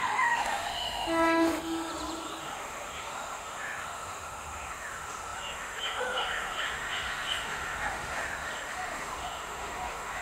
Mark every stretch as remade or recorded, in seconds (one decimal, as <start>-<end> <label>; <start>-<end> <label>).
0.0-1.9 remade; 1.9-2.4 recorded; 2.4-10.2 remade